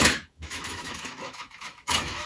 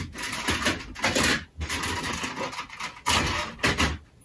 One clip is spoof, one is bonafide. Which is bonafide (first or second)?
second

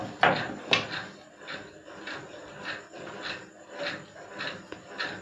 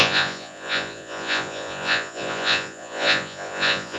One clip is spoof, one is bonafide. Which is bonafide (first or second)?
first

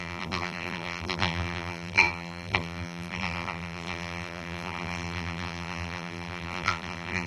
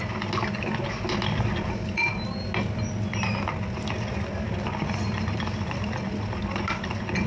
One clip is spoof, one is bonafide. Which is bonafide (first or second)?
second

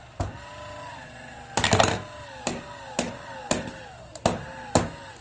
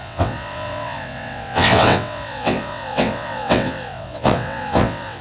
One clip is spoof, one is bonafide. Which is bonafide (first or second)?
first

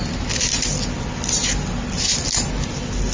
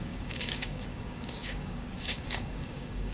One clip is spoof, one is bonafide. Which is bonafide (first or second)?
first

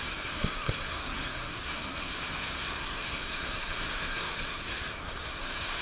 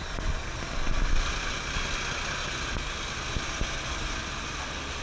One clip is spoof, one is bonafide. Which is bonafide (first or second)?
second